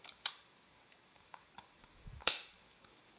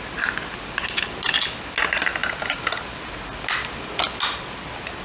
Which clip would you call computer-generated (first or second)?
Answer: first